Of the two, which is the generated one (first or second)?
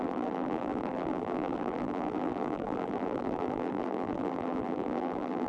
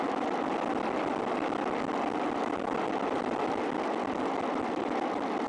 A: first